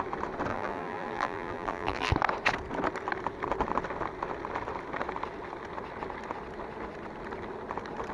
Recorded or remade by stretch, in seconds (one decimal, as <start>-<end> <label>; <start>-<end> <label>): 0.0-0.5 recorded; 0.5-2.1 remade; 2.1-8.1 recorded